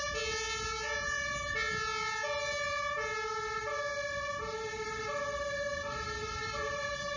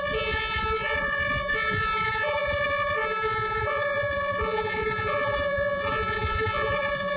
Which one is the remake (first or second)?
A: second